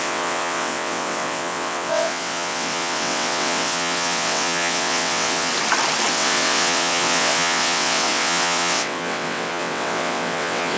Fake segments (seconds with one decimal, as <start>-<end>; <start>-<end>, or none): 0.0-5.5; 6.1-10.8